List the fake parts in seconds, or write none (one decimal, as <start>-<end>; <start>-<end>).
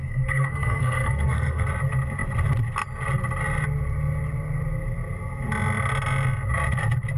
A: 0.0-1.7